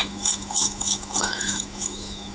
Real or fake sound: fake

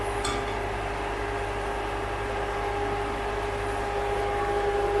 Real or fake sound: real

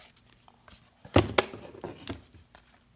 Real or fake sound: real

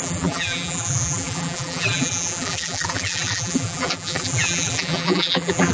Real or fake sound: fake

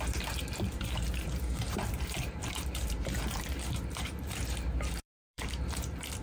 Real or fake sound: fake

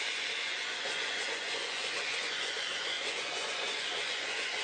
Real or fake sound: fake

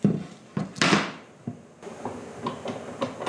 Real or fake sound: real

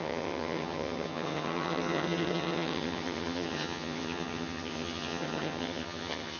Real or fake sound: fake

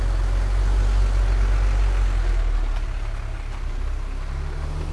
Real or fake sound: real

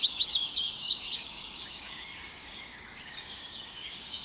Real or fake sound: fake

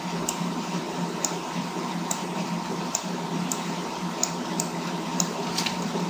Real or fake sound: fake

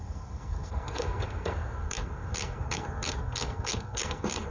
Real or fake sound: fake